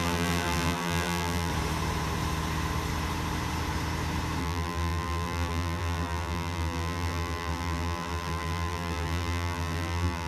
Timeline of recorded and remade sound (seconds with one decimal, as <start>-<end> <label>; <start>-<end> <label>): 0.0-1.5 remade; 1.5-4.4 recorded; 4.4-10.3 remade